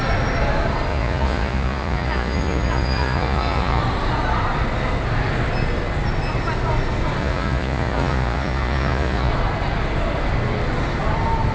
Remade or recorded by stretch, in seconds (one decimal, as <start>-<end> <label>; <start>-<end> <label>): 0.0-0.9 recorded; 0.9-3.8 remade; 3.8-7.2 recorded; 7.2-9.3 remade; 9.3-11.5 recorded